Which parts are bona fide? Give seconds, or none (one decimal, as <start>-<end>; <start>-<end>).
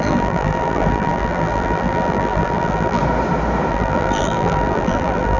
3.0-3.7